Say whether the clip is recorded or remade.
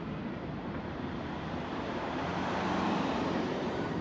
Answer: remade